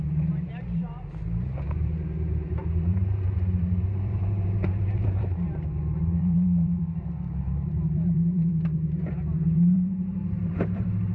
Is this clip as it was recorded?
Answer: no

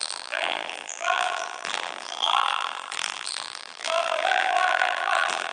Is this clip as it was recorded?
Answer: no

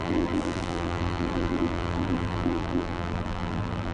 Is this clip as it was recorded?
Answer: no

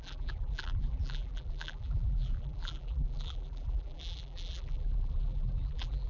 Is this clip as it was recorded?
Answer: no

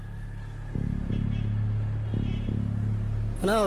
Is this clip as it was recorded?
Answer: yes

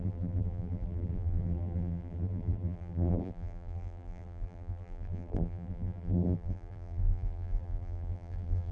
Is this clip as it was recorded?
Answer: no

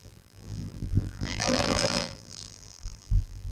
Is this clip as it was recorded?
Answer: no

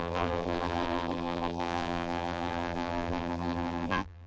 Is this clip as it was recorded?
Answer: no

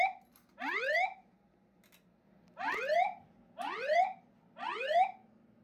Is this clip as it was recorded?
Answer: yes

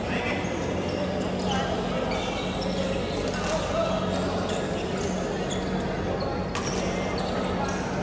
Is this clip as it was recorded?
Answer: yes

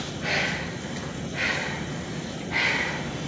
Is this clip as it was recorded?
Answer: yes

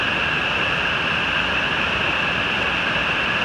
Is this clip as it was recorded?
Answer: yes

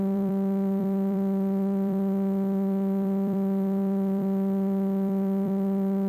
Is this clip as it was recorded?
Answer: no